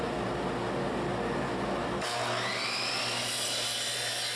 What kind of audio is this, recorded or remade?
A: recorded